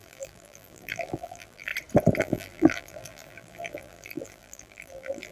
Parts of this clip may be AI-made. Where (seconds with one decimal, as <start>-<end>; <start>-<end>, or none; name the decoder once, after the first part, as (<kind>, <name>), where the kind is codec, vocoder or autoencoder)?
0.0-1.7 (vocoder, BigVGAN v2); 2.2-5.3